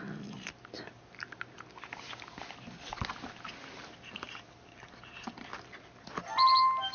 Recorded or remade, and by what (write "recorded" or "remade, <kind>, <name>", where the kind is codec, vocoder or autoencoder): recorded